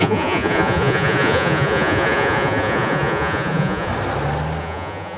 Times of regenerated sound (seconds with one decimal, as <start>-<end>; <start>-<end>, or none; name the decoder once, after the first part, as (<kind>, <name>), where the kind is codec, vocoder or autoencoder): 0.0-3.9 (vocoder, Vocos); 4.6-5.2